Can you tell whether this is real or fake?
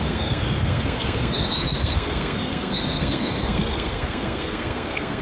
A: fake